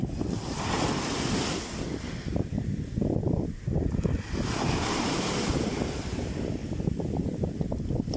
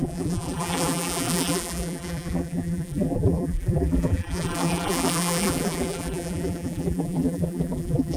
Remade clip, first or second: second